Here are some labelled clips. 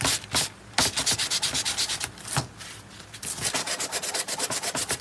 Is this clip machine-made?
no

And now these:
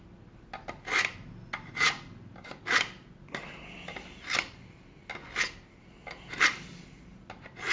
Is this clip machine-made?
no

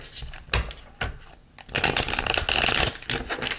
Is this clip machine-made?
no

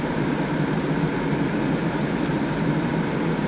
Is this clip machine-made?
yes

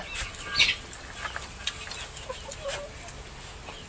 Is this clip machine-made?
no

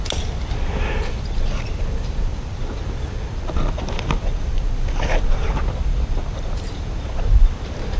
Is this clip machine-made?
no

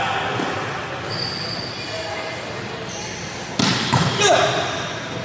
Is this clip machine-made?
no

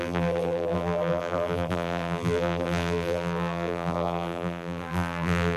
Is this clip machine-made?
yes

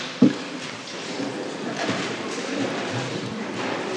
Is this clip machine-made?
yes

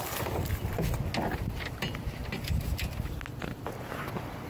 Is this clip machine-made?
no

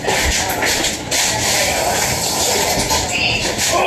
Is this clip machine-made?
yes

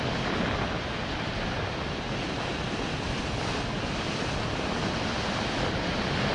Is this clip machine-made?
no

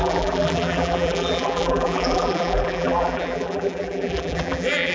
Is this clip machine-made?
yes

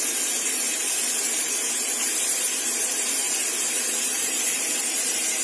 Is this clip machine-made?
yes